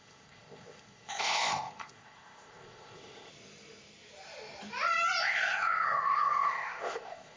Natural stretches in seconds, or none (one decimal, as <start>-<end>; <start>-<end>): 3.3-5.2